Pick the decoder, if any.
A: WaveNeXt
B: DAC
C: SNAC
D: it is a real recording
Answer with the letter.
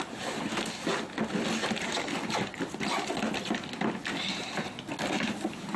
D